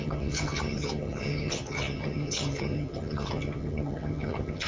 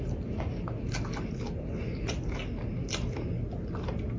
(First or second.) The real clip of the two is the second